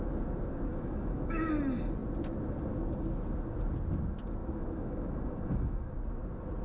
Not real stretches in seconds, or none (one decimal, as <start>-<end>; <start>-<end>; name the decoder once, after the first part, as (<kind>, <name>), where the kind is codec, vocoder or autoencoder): 0.7-1.5 (autoencoder, DAC-VAE); 4.4-5.9